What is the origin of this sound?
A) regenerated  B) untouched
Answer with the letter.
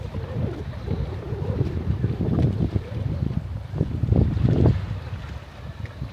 A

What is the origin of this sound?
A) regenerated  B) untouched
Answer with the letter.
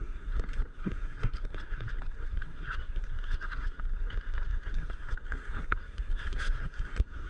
A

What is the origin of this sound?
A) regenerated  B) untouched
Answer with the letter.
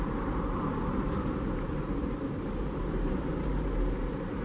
A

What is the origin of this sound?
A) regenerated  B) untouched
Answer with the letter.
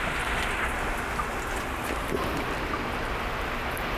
B